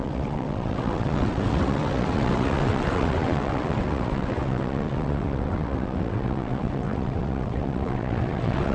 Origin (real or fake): fake